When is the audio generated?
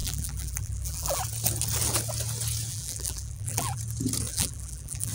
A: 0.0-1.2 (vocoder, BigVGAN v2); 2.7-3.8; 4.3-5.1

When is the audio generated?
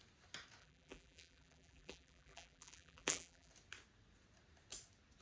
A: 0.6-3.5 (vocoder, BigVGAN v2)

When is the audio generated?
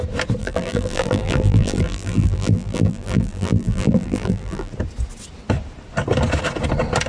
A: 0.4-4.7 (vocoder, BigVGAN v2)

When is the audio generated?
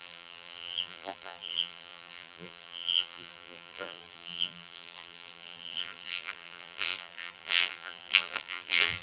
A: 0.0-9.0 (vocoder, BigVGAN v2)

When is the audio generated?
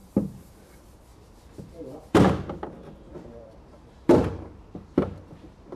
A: 0.0-0.5 (vocoder, BigVGAN v2); 1.1-2.3; 3.1-4.3